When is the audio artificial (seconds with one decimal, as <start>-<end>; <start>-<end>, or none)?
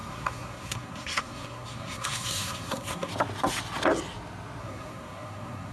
0.0-3.1; 4.6-5.7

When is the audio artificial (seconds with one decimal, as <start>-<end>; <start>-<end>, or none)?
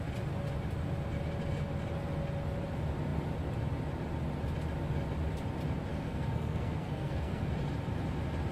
5.9-7.5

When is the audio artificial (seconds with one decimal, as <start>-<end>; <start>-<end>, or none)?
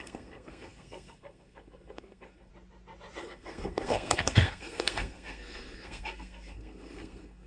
0.0-2.5; 3.2-7.5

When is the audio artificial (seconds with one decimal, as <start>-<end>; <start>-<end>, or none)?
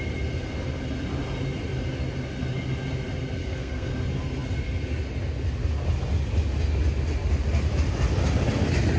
3.4-3.9